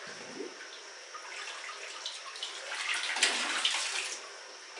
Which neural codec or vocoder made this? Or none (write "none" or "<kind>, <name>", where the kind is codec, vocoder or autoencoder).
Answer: none